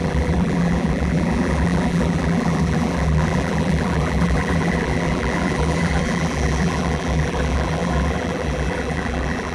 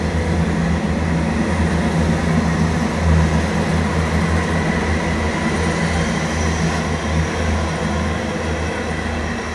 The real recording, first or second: second